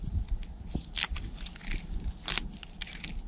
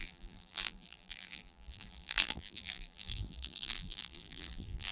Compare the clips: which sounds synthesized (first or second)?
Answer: second